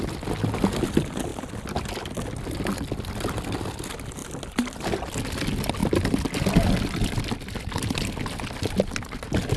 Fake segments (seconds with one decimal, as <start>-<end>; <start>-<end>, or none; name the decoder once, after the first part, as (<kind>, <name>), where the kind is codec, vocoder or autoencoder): none